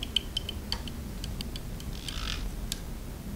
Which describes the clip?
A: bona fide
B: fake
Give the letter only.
A